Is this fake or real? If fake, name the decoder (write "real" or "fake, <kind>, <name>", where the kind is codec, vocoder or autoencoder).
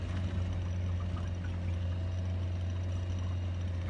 real